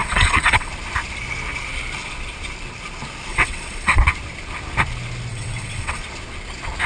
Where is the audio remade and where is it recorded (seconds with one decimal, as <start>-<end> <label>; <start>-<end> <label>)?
0.0-0.7 remade; 0.7-3.3 recorded; 3.3-4.0 remade; 4.0-5.3 recorded; 5.3-6.0 remade; 6.0-6.9 recorded